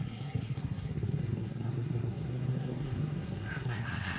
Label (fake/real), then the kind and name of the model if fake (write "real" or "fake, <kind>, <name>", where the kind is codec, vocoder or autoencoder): fake, codec, SNAC